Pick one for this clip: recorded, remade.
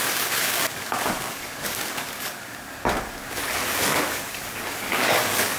remade